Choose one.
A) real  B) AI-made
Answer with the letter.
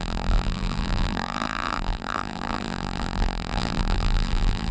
B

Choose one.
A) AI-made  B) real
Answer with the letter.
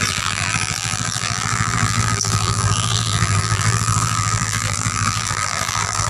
A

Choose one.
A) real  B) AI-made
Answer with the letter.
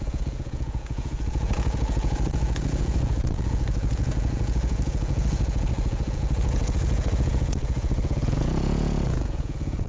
B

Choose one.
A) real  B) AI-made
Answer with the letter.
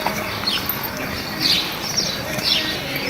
A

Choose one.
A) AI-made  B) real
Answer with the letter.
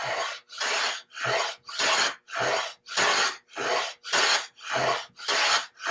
B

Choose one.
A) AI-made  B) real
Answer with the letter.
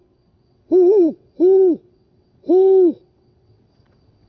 A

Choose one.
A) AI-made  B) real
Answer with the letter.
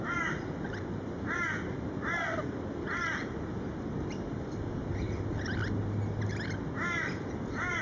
B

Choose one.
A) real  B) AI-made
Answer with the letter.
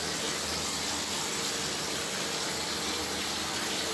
A